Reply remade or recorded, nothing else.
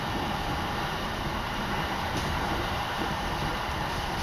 remade